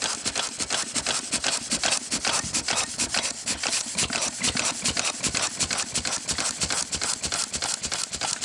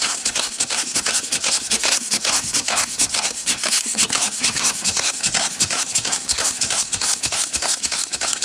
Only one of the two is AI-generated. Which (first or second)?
second